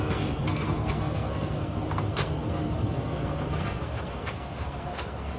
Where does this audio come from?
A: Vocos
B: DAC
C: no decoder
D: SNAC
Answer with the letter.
D